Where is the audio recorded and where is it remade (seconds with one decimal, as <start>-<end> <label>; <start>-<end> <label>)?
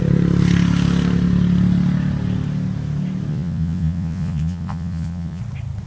0.0-3.3 recorded; 3.3-5.4 remade; 5.4-5.9 recorded